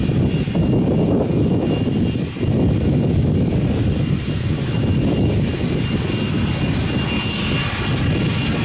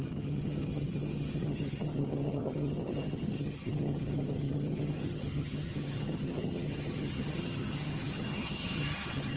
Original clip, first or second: first